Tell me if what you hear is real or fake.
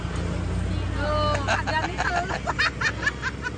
real